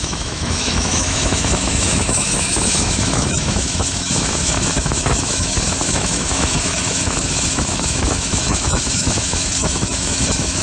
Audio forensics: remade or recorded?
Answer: remade